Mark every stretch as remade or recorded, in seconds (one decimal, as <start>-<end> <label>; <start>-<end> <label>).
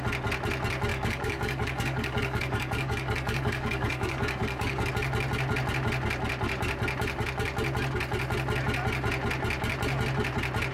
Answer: 0.0-0.9 recorded; 0.9-4.9 remade; 4.9-10.7 recorded